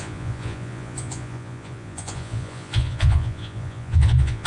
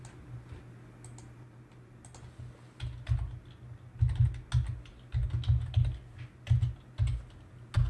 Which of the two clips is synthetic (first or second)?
first